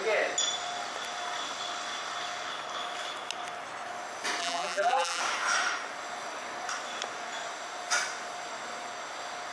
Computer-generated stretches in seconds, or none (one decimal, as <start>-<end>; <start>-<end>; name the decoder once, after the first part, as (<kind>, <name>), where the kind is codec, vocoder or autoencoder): 4.4-5.2 (vocoder, BigVGAN v2)